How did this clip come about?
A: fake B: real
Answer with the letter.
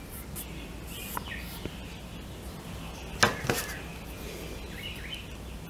B